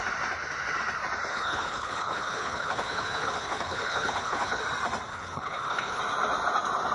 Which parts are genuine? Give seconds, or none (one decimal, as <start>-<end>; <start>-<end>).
0.0-1.3; 4.6-5.1; 6.0-6.9

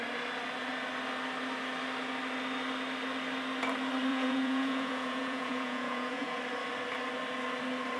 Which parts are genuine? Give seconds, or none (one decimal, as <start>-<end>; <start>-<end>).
0.0-4.1; 6.4-8.0

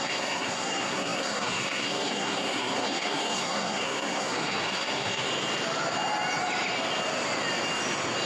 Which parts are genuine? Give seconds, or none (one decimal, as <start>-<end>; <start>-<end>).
5.3-8.3

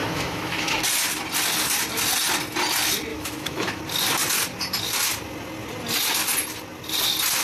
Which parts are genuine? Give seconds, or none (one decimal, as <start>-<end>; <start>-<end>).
0.8-3.1; 3.8-7.4

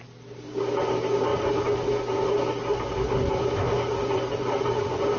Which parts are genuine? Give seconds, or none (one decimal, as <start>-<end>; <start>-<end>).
0.0-5.2

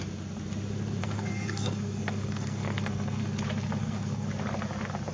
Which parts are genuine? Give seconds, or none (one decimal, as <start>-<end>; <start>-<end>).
0.0-1.0; 3.2-3.8; 4.3-5.1

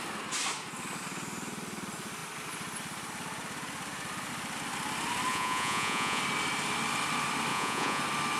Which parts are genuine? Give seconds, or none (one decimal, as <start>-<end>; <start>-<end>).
0.0-5.3; 6.2-7.5; 8.0-8.4

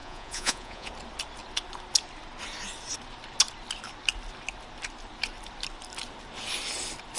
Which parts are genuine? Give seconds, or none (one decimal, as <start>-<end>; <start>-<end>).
0.9-7.2